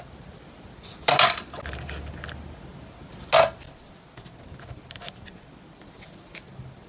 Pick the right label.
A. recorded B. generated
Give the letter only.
A